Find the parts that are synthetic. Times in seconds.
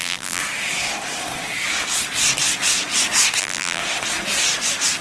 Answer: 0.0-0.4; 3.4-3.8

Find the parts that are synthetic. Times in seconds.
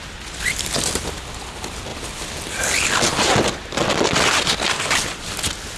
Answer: none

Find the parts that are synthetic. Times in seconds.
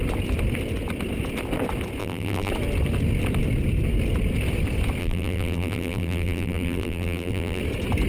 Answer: 2.0-2.5; 5.0-7.6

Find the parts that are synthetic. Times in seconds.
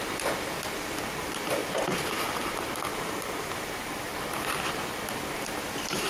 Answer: 2.9-4.1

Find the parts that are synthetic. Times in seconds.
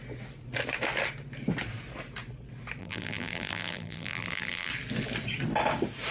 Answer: 2.8-4.7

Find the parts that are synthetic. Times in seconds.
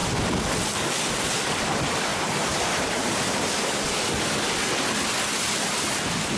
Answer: 2.1-4.6